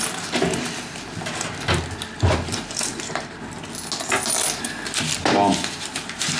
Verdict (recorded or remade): recorded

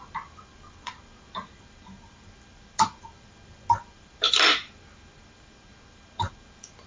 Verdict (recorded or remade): remade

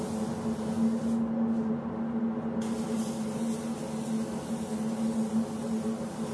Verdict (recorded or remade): recorded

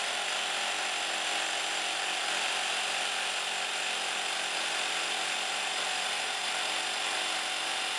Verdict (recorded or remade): recorded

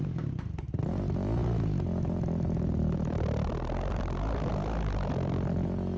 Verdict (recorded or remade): recorded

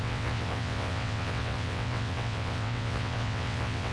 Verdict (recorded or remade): remade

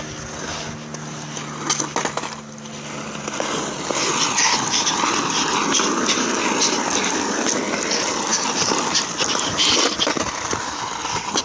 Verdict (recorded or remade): recorded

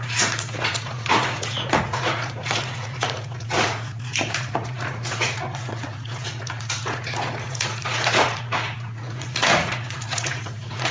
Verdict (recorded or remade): remade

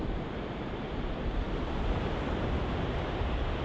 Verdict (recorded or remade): recorded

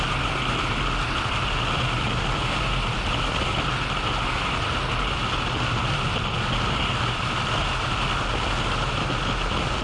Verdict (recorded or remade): recorded